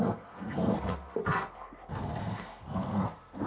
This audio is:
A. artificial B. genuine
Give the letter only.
A